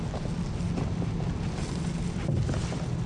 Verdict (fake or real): real